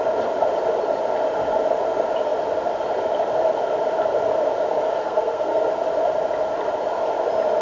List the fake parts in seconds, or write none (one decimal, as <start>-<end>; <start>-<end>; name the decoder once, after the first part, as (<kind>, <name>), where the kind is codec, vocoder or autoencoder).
5.0-5.7 (codec, SNAC)